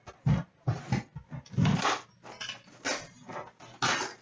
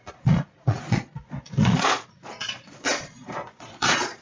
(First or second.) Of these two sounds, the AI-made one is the second